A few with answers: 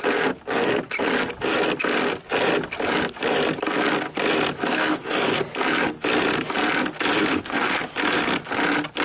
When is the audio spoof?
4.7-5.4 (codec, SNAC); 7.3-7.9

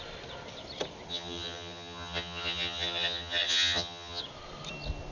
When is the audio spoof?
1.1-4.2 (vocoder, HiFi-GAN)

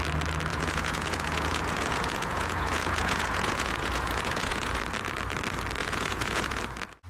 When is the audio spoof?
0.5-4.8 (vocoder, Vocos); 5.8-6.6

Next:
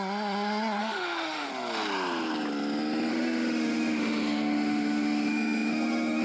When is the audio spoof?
0.8-1.5 (autoencoder, DAC-VAE); 3.1-6.2